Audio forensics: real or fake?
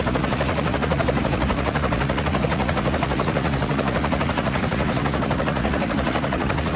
fake